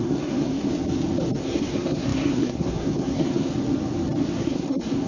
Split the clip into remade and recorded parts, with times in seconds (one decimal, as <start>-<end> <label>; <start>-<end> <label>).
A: 0.0-0.7 remade; 0.7-1.4 recorded; 1.4-3.5 remade; 3.5-4.4 recorded; 4.4-5.1 remade